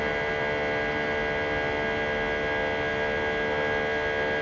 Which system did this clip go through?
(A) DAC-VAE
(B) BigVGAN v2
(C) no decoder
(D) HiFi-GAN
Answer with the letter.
C